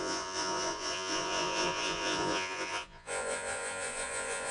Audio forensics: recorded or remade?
remade